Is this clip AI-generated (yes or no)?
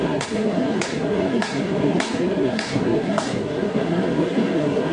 yes